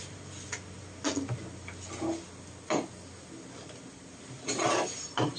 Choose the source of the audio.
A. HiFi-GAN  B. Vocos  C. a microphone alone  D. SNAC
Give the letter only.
C